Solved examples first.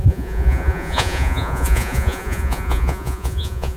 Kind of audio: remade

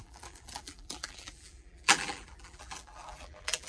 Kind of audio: remade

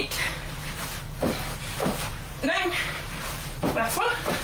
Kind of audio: remade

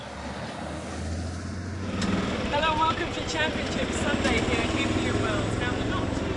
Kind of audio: recorded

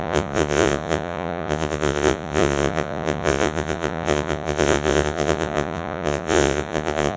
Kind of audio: remade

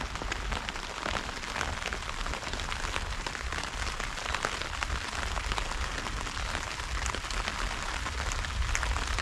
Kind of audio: recorded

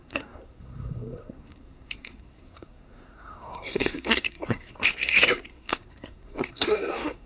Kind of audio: remade